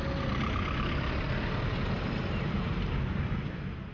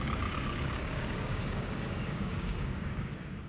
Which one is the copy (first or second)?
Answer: second